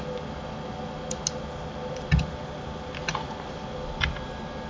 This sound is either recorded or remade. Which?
recorded